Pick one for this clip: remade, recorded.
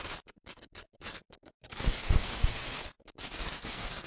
remade